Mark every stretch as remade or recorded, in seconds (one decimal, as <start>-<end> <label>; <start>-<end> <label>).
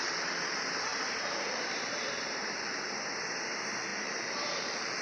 0.0-0.9 recorded; 0.9-2.9 remade; 2.9-3.9 recorded; 3.9-5.0 remade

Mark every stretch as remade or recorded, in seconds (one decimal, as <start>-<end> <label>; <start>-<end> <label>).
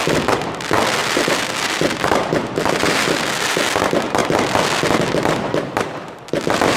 0.0-6.8 recorded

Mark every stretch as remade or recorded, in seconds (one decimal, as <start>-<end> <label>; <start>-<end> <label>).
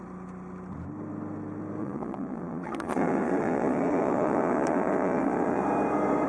0.0-1.8 recorded; 1.8-5.6 remade; 5.6-6.3 recorded